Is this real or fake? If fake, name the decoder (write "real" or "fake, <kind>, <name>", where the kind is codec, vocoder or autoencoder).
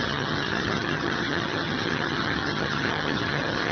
fake, vocoder, HiFi-GAN